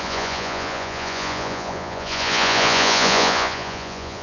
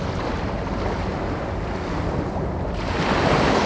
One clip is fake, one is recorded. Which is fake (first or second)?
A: first